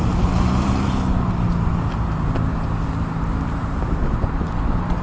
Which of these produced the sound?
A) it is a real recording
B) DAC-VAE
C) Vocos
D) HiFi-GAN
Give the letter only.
A